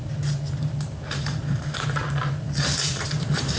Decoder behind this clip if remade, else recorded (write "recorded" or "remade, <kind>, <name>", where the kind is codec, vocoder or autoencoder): remade, vocoder, BigVGAN v2